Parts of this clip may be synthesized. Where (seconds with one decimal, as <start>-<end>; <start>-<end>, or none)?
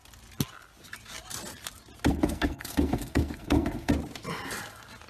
2.1-3.9